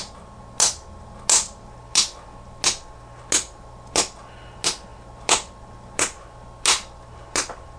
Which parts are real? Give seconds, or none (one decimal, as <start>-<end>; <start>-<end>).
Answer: 0.0-7.8